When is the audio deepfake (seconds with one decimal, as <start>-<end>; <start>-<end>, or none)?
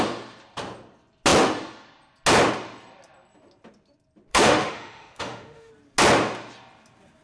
4.3-5.7